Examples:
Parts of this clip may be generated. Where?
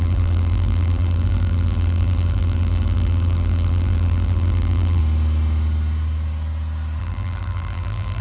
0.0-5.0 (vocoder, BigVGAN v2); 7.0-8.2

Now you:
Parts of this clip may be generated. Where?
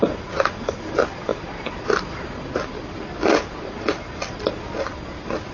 none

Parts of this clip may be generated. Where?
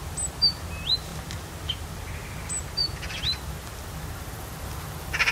none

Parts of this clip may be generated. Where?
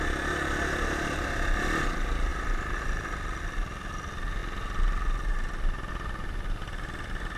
0.0-4.4 (vocoder, BigVGAN v2); 5.9-7.4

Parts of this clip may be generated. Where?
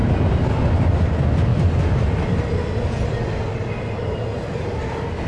none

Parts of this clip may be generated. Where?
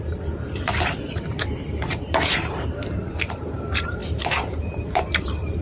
0.0-5.6 (vocoder, BigVGAN v2)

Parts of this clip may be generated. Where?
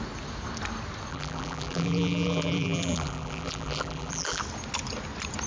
1.1-4.4 (vocoder, BigVGAN v2)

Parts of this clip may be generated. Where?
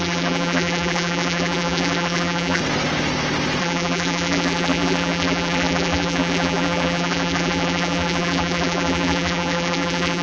0.0-2.6 (vocoder, BigVGAN v2); 3.6-10.2